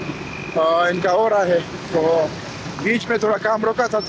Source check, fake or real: real